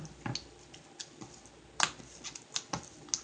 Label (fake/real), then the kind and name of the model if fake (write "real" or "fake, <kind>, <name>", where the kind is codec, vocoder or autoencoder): real